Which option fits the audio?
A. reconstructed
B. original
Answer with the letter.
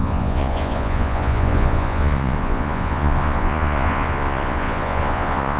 A